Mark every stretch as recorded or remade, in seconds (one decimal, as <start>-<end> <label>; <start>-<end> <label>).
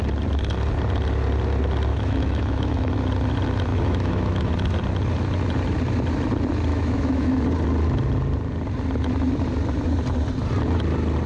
0.0-1.9 recorded; 1.9-2.9 remade; 2.9-3.7 recorded; 3.7-4.5 remade; 4.5-6.7 recorded; 6.7-7.4 remade; 7.4-11.3 recorded